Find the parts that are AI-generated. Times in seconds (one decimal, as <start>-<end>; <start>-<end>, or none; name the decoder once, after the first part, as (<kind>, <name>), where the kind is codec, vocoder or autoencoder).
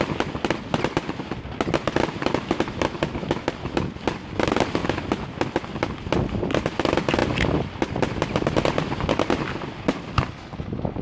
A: none